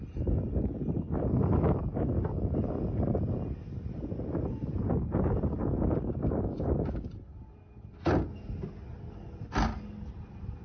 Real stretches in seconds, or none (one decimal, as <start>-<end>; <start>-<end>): 0.0-10.6